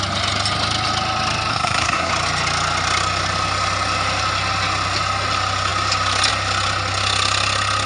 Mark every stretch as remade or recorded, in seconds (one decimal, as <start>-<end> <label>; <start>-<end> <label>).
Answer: 0.0-1.5 recorded; 1.5-2.1 remade; 2.1-7.9 recorded